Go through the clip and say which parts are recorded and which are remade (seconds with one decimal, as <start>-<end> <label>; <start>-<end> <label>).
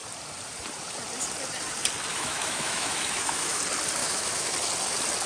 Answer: 0.0-2.1 recorded; 2.1-3.6 remade; 3.6-4.0 recorded; 4.0-4.5 remade; 4.5-5.3 recorded